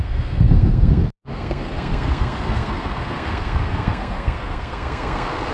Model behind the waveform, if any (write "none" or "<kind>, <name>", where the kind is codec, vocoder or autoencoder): codec, SNAC